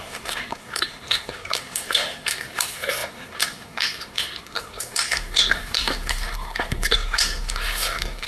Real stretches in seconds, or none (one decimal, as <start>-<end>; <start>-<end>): none